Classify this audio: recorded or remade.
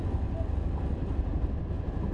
recorded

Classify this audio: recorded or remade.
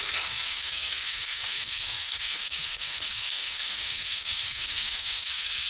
remade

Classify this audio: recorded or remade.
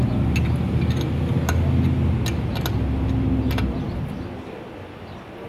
recorded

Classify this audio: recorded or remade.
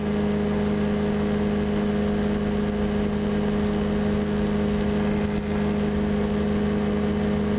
recorded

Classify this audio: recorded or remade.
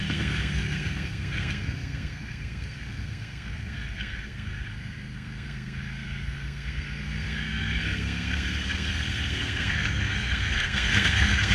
remade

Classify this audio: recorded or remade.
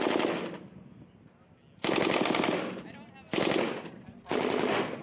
recorded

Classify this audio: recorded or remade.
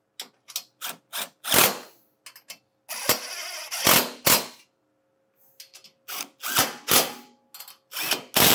recorded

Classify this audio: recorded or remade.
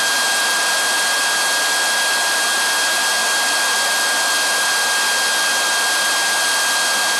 recorded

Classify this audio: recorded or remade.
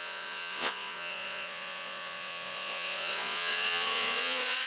remade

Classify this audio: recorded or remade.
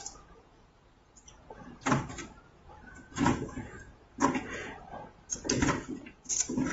remade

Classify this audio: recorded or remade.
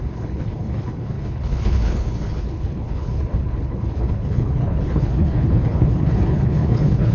remade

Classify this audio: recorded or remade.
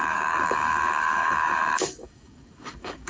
remade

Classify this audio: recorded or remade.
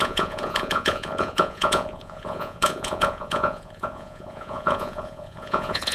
remade